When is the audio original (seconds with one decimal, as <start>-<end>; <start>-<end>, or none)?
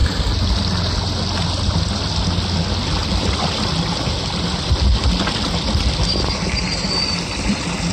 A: 0.0-7.9